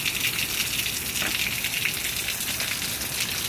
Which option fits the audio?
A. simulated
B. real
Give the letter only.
B